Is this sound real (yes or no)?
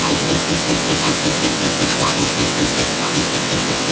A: no